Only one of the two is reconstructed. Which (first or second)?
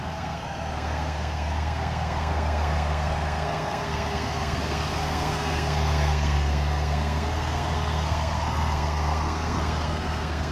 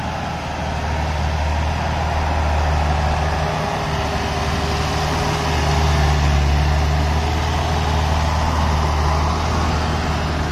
first